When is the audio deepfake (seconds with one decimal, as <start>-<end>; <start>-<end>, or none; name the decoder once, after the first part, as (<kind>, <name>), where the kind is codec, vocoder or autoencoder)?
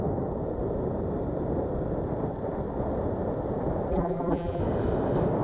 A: 3.9-4.6 (vocoder, BigVGAN v2)